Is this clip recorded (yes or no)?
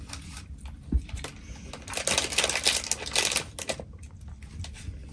yes